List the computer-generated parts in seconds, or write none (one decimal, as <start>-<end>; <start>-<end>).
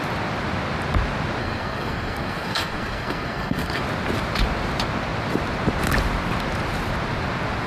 1.4-3.8